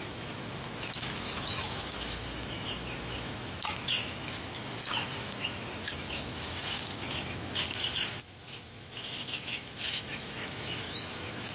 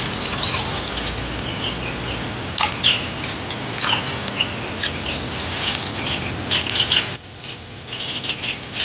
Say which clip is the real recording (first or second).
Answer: second